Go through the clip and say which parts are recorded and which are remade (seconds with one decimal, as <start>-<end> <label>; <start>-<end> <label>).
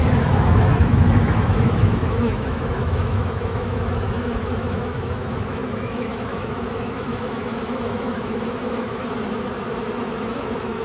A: 0.0-9.0 remade; 9.0-10.0 recorded; 10.0-10.8 remade